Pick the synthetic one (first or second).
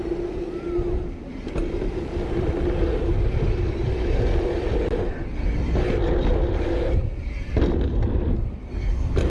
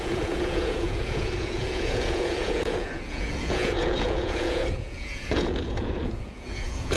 second